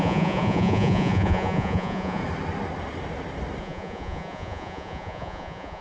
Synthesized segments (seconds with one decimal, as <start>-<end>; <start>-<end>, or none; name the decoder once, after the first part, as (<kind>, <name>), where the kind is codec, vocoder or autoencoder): 0.0-2.2 (vocoder, Vocos); 3.6-5.8